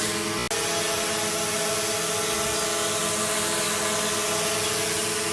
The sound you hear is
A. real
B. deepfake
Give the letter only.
A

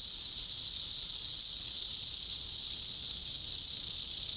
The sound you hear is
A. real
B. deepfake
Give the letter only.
A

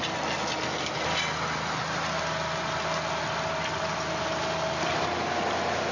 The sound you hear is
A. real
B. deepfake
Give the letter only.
A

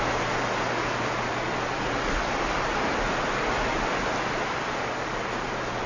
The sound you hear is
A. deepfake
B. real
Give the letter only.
B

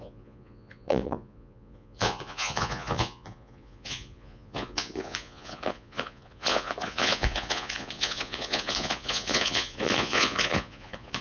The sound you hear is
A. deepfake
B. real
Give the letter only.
A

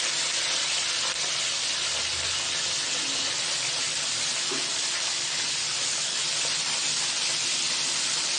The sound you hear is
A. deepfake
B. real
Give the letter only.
B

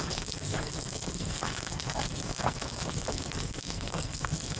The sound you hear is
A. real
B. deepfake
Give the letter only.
B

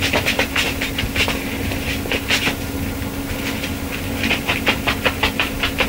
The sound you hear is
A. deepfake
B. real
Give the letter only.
A